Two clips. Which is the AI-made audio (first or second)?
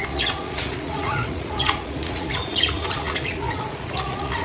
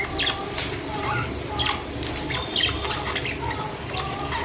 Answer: first